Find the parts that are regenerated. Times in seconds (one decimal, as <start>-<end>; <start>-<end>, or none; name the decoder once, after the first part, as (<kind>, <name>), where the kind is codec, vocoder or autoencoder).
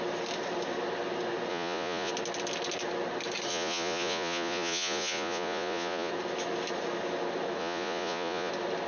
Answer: 1.5-2.1 (vocoder, Vocos); 3.5-6.1; 7.6-8.5